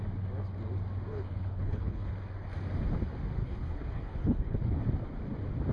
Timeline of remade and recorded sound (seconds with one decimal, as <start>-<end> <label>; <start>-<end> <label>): 0.0-1.1 recorded; 1.1-2.1 remade; 2.1-3.4 recorded; 3.4-4.8 remade; 4.8-5.7 recorded